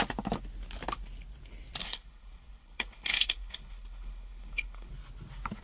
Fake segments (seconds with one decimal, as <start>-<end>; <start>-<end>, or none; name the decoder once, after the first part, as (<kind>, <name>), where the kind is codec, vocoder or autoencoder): 1.8-4.9 (codec, HILCodec)